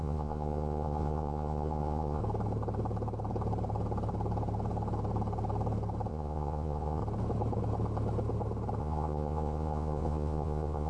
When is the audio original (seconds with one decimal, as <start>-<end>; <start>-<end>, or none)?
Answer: 2.2-6.1; 7.0-8.8